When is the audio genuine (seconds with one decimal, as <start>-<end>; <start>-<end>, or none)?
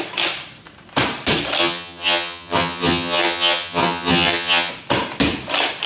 0.0-1.6; 4.7-5.9